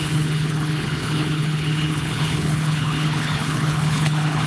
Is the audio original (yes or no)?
no